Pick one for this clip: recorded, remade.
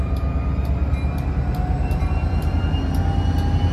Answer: recorded